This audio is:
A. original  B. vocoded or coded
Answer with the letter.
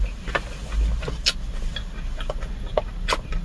A